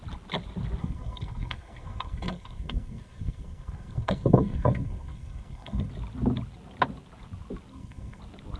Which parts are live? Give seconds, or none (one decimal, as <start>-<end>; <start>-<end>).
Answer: 0.0-0.8; 5.9-7.7; 8.2-8.6